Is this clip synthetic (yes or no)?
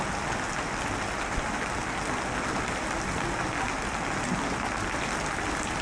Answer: no